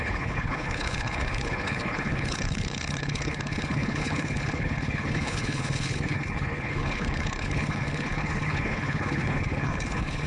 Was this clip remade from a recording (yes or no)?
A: yes